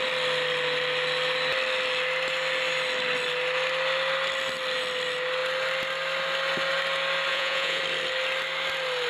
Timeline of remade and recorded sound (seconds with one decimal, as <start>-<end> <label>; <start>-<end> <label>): 0.0-7.3 recorded; 7.3-7.8 remade; 7.8-9.1 recorded